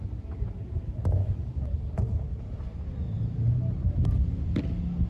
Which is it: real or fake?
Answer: real